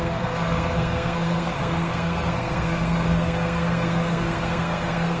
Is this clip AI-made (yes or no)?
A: yes